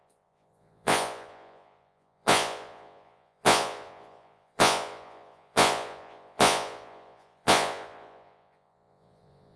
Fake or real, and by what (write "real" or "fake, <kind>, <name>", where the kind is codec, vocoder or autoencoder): fake, vocoder, Vocos